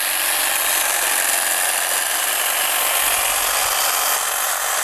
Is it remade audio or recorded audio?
recorded